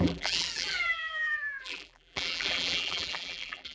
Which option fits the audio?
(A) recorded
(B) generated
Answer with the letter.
B